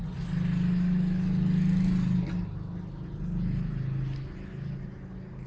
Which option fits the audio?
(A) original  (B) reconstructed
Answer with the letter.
A